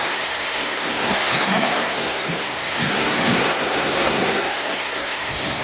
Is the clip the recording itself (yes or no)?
no